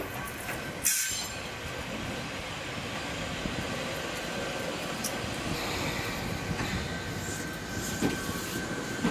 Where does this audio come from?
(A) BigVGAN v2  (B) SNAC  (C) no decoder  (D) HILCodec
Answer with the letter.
C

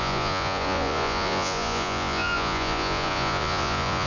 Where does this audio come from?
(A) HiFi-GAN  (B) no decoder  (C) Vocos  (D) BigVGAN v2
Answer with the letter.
C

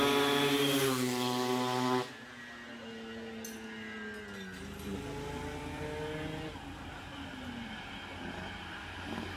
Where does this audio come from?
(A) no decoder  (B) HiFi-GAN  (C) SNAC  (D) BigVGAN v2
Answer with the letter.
A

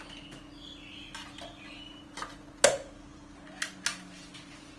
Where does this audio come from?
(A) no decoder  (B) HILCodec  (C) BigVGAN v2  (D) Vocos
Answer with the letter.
A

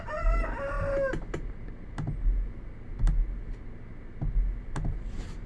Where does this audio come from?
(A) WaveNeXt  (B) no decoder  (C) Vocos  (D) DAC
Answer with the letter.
B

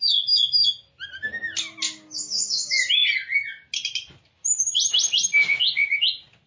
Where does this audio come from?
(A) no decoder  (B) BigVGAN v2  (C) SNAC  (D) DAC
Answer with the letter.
A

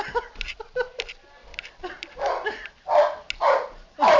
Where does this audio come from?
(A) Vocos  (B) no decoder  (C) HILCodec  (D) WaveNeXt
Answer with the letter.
B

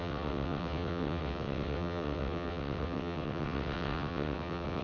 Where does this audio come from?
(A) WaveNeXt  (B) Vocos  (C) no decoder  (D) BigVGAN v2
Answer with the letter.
A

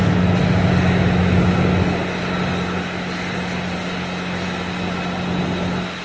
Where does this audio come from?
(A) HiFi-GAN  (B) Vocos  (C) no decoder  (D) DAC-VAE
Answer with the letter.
C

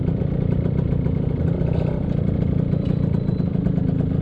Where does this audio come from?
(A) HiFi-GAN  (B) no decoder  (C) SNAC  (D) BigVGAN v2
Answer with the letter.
B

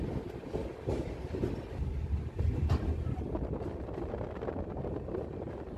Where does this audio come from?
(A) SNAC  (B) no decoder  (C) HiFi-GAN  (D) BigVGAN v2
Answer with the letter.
B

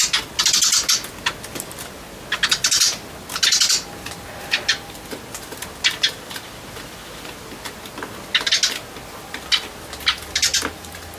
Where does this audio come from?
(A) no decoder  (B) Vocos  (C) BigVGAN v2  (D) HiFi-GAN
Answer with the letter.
A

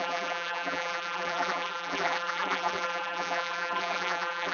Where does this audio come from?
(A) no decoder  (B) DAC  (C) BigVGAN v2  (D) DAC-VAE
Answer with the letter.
C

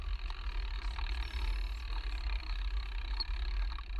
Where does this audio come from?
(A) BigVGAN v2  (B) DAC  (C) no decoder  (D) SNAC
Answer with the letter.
C